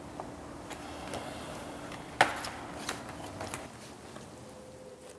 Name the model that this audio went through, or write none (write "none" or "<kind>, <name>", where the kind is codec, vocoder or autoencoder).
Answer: none